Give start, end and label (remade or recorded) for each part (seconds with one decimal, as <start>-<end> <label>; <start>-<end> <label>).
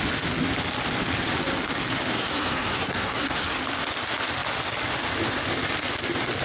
0.0-2.1 recorded; 2.1-3.6 remade; 3.6-6.4 recorded